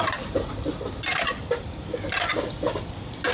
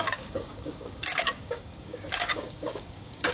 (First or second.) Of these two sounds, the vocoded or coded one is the second